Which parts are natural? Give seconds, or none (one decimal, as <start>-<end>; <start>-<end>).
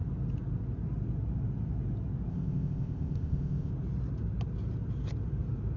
0.0-2.3; 3.7-5.8